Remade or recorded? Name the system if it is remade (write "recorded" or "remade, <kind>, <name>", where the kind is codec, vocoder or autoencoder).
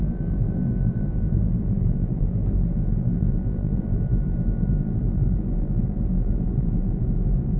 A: remade, vocoder, BigVGAN v2